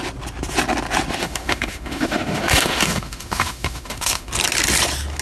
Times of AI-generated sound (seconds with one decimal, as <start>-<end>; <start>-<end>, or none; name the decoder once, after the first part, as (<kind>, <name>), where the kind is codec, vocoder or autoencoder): 1.2-4.3 (autoencoder, DAC-VAE)